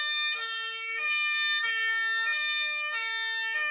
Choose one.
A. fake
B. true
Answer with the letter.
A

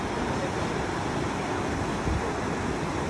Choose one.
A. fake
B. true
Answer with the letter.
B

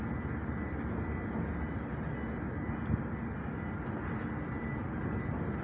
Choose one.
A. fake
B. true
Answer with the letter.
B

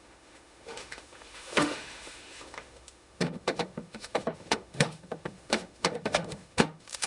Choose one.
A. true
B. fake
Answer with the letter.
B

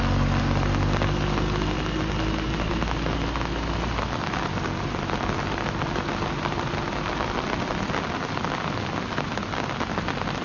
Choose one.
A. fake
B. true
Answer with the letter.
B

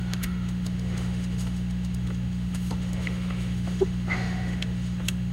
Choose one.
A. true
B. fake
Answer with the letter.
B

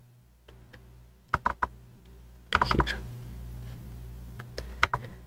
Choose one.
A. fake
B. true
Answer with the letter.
B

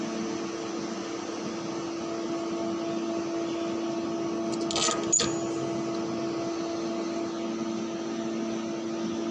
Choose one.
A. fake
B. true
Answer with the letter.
B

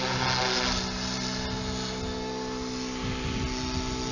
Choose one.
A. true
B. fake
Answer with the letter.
A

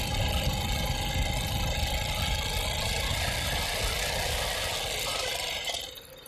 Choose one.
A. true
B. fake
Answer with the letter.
A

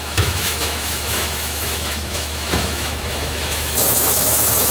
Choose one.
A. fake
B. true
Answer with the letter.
A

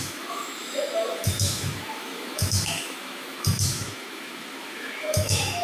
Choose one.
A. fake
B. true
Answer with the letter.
A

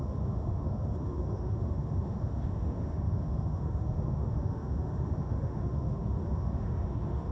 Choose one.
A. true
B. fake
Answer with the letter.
B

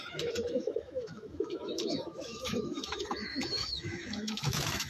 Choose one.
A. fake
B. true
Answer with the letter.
A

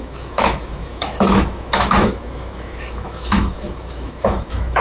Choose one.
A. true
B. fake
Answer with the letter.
B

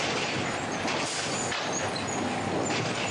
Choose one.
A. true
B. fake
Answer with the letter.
A